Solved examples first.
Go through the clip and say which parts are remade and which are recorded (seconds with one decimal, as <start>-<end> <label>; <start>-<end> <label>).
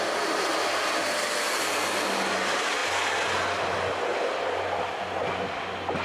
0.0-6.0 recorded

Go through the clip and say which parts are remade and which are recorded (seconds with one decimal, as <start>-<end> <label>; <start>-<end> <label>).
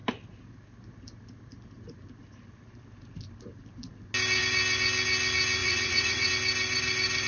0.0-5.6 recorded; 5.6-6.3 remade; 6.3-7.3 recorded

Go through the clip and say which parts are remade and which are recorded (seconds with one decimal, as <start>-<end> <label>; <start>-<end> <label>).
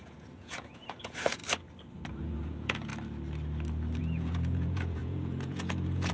0.0-1.4 remade; 1.4-2.2 recorded; 2.2-2.9 remade; 2.9-4.0 recorded; 4.0-6.1 remade